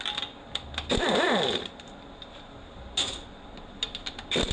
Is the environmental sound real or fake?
fake